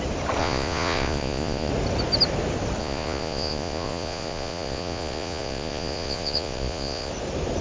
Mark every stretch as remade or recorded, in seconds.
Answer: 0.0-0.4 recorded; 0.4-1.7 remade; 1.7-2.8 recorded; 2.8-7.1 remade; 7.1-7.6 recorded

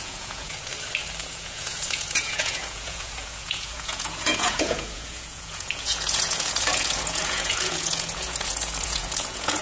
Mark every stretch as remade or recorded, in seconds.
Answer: 0.0-0.7 remade; 0.7-1.2 recorded; 1.2-9.6 remade

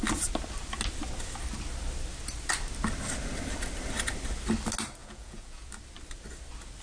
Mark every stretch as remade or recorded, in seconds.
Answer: 0.0-5.0 recorded; 5.0-5.7 remade; 5.7-6.8 recorded

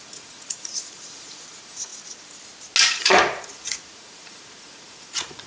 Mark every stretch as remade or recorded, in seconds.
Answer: 0.0-1.9 remade; 1.9-2.9 recorded; 2.9-5.5 remade

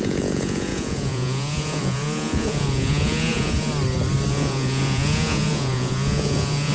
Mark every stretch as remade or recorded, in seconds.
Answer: 0.0-3.7 remade; 3.7-4.3 recorded; 4.3-6.7 remade